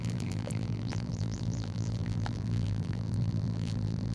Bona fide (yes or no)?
no